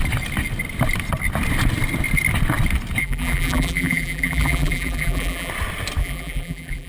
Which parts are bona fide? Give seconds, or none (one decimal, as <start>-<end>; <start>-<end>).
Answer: 0.0-3.0; 5.5-6.0